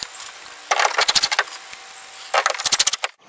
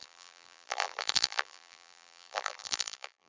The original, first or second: first